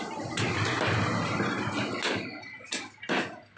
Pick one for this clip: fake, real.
real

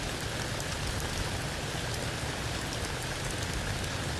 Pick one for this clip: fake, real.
real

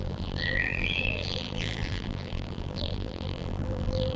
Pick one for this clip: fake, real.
fake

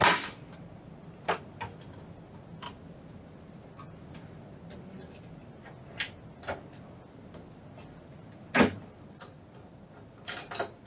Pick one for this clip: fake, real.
real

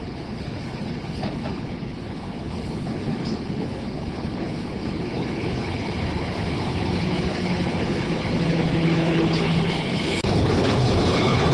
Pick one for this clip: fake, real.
fake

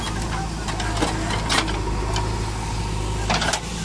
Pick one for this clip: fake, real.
real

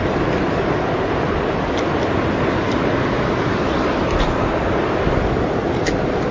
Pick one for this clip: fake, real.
real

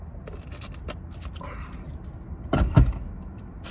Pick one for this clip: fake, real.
real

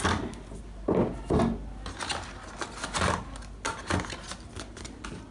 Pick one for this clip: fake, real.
real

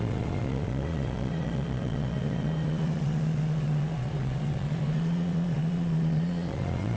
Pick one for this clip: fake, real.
fake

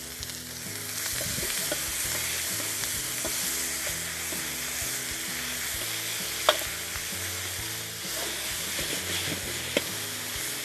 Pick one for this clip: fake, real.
real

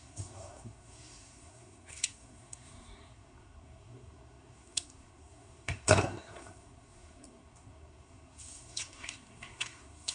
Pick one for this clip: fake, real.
fake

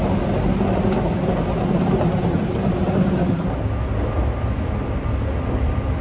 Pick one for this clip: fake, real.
real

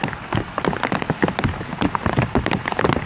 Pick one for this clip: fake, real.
real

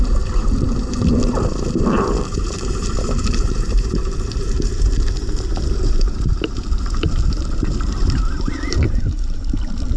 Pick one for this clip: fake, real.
fake